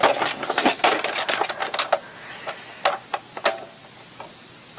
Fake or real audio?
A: real